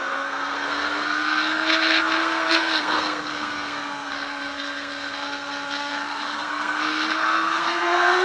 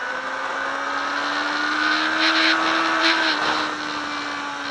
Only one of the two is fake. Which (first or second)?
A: first